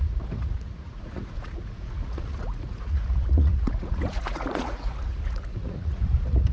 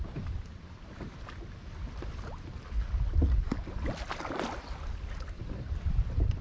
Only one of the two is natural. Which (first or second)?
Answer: second